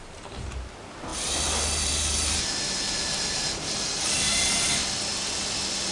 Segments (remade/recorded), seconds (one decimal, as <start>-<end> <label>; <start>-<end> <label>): 0.0-1.1 recorded; 1.1-4.6 remade; 4.6-5.9 recorded